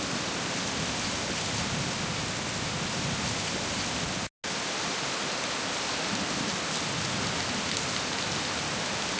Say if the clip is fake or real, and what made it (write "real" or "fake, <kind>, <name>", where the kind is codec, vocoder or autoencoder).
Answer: real